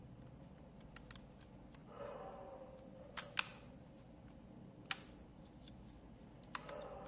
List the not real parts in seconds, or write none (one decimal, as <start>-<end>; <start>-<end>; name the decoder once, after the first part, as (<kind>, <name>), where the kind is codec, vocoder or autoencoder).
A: none